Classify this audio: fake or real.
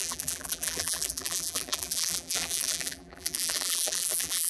fake